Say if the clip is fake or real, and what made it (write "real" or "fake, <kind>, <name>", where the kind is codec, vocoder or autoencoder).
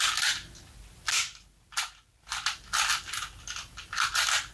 real